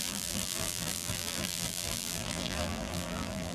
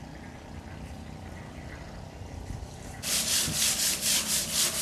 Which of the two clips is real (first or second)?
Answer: second